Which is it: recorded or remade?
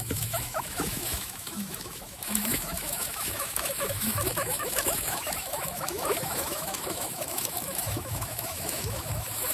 remade